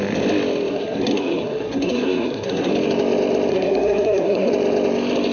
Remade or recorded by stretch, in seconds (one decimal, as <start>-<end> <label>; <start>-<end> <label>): 0.0-0.7 recorded; 0.7-2.7 remade; 2.7-3.5 recorded; 3.5-4.5 remade; 4.5-5.3 recorded